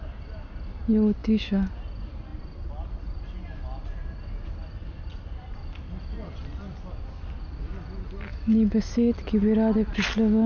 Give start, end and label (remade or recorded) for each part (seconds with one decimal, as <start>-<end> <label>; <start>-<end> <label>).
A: 0.0-1.2 recorded; 1.2-1.7 remade; 1.7-8.3 recorded; 8.3-8.9 remade; 8.9-10.5 recorded